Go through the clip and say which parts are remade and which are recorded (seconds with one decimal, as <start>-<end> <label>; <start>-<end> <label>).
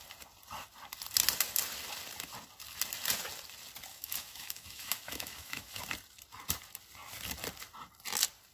0.0-3.9 recorded; 3.9-5.8 remade; 5.8-8.5 recorded